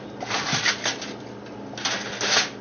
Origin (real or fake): real